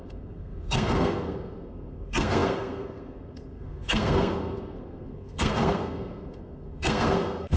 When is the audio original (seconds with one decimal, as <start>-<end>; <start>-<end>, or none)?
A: none